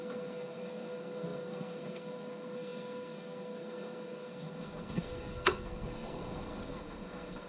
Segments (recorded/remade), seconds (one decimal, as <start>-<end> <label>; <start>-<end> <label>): 0.0-7.5 remade